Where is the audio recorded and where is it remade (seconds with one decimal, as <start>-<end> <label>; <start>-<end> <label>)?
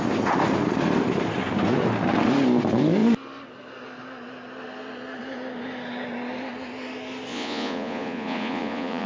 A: 0.0-7.3 recorded; 7.3-9.1 remade